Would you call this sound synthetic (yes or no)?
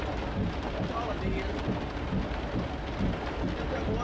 no